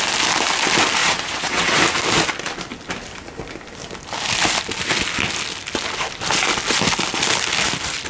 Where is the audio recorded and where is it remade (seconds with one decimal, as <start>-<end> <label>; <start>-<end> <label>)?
0.0-1.0 recorded; 1.0-1.8 remade; 1.8-8.1 recorded